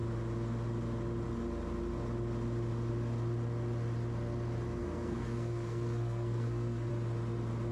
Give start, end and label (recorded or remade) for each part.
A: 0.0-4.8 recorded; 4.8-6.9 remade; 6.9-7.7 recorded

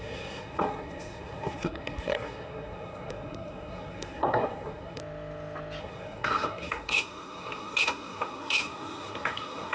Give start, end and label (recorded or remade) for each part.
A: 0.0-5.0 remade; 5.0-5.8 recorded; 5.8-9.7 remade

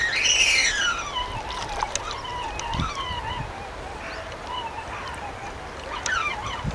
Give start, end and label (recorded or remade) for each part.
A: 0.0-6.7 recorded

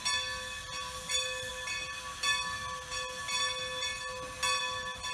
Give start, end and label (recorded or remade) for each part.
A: 0.0-5.1 recorded

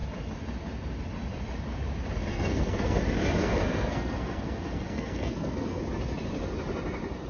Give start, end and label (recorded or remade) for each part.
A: 0.0-2.3 recorded; 2.3-3.0 remade; 3.0-3.4 recorded; 3.4-5.8 remade; 5.8-7.3 recorded

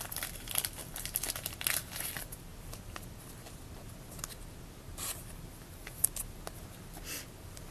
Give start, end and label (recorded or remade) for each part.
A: 0.0-7.7 recorded

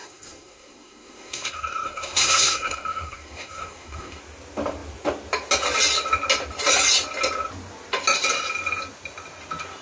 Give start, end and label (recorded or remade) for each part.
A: 0.0-4.2 remade; 4.2-9.8 recorded

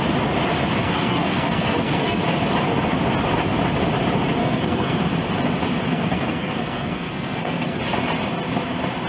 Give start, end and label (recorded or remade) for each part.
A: 0.0-0.8 recorded; 0.8-2.2 remade; 2.2-4.4 recorded; 4.4-5.0 remade; 5.0-5.9 recorded; 5.9-7.8 remade; 7.8-9.1 recorded